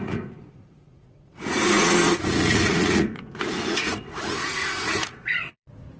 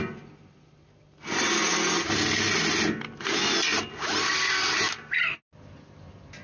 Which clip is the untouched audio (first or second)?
second